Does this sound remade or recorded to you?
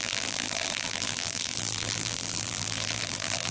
remade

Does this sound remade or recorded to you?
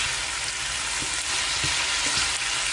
recorded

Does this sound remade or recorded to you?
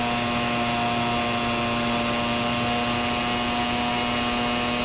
recorded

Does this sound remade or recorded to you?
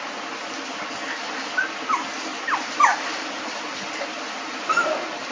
recorded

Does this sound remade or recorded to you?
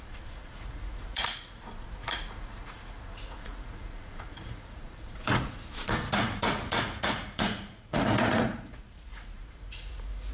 remade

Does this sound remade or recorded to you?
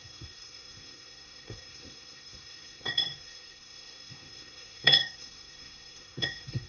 remade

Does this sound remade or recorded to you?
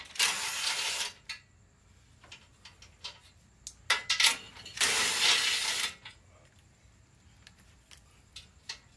recorded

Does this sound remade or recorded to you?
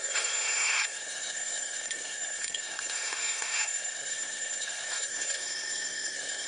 remade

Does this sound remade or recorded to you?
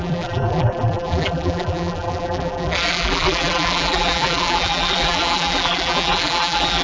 remade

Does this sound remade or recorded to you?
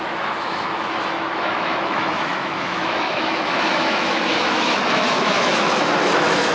remade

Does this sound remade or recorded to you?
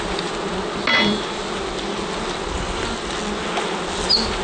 recorded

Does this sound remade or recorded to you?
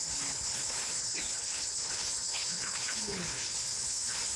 remade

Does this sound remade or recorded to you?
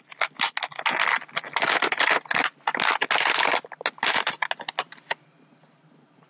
recorded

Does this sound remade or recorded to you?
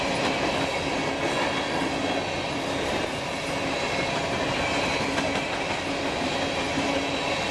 recorded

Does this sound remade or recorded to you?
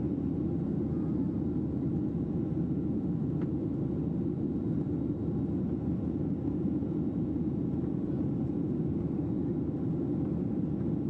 recorded